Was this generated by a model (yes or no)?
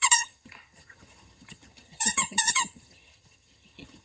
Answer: yes